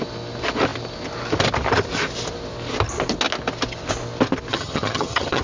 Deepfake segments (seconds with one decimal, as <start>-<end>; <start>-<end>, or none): 4.5-5.4